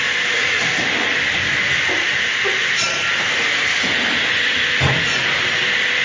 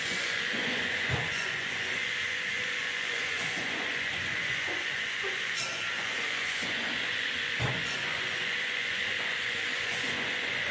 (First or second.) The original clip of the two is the first